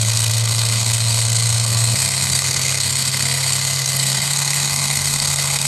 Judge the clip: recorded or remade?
remade